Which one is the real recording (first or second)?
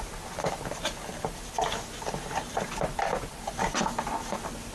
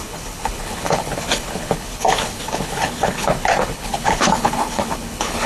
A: first